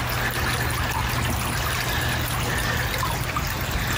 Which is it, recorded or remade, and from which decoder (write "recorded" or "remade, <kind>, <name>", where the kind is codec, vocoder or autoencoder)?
recorded